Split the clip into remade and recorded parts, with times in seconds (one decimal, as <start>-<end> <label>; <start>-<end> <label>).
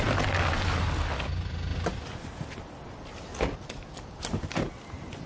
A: 0.0-5.3 recorded